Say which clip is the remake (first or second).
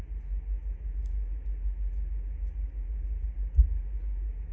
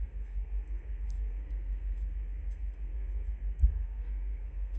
second